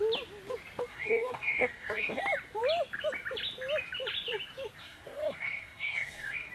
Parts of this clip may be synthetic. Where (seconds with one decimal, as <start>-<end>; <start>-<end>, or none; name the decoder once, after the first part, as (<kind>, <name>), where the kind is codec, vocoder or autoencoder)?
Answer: 0.9-2.2 (codec, SNAC); 4.8-6.5